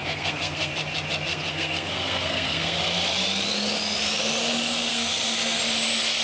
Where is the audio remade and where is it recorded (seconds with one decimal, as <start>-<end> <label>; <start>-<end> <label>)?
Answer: 0.0-0.7 remade; 0.7-1.3 recorded; 1.3-2.8 remade; 2.8-4.9 recorded; 4.9-5.6 remade; 5.6-6.2 recorded